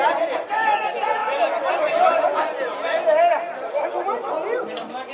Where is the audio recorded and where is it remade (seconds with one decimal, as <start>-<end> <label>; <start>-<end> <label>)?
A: 0.0-5.1 recorded